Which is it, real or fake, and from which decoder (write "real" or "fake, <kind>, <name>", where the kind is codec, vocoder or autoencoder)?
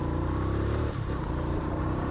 fake, vocoder, BigVGAN v2